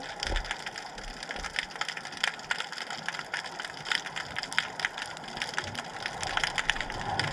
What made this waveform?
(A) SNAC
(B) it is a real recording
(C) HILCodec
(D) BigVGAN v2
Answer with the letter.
B